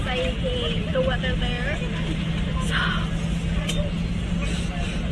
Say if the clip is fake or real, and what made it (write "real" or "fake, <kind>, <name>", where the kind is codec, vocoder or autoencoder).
real